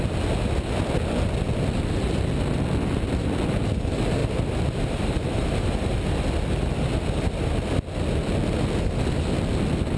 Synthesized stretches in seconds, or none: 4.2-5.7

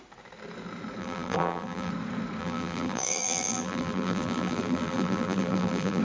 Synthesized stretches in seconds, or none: 1.0-1.9; 2.4-6.0

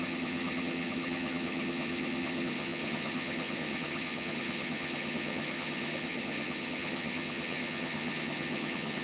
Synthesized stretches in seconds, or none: 0.0-9.0

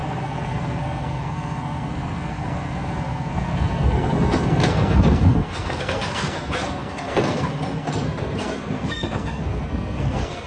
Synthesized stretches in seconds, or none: 0.0-10.5

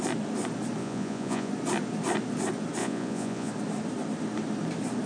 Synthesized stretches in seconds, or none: 0.8-1.5; 2.8-3.5

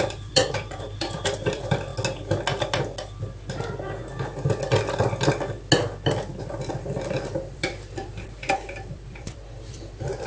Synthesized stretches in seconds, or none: 0.0-1.9; 6.4-10.3

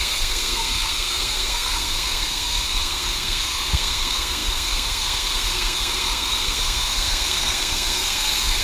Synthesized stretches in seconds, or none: 0.0-8.6